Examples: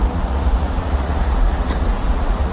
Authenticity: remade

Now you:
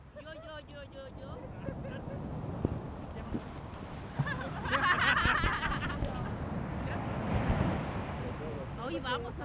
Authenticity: recorded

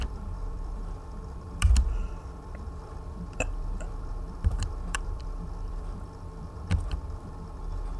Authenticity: remade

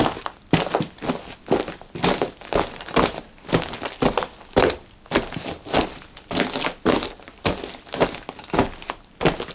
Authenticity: recorded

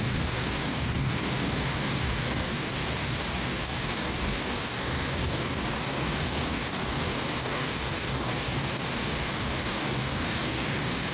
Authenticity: remade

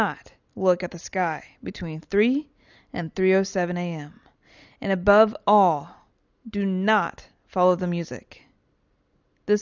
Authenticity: recorded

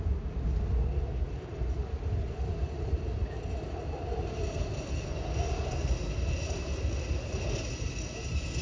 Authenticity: recorded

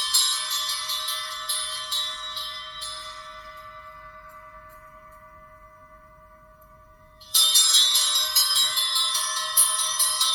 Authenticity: remade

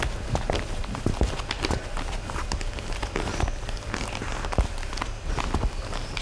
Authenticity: recorded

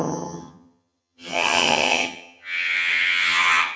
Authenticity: remade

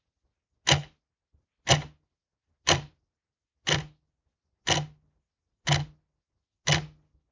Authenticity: recorded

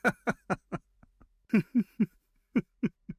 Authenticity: recorded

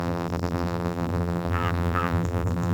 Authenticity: remade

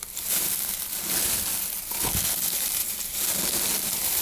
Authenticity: recorded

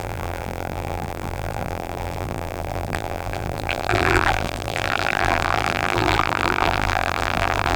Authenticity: remade